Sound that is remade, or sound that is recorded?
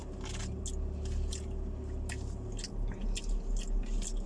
recorded